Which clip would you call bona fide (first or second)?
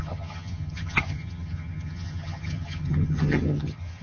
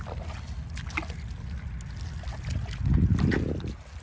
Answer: second